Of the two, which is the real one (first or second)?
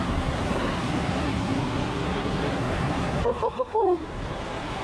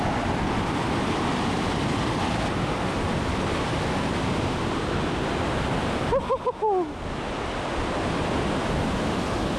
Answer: second